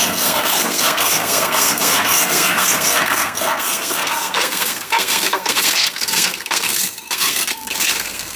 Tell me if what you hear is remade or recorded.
remade